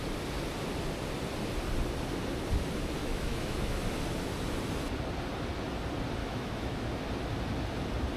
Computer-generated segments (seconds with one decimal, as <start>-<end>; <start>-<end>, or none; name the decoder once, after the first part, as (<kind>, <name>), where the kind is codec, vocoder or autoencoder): 3.0-3.8 (autoencoder, DAC-VAE); 6.2-6.8